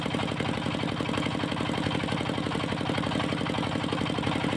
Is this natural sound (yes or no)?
yes